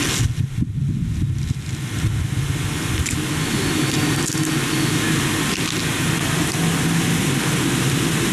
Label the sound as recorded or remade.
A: recorded